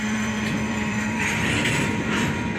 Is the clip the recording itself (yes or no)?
no